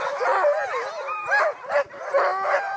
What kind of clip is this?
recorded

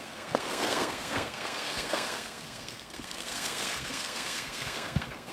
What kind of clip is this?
remade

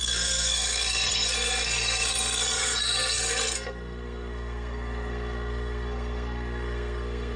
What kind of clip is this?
remade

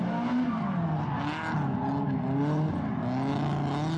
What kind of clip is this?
recorded